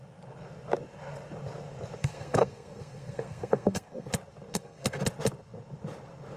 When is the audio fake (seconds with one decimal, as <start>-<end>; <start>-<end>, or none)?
2.0-4.1; 4.5-5.0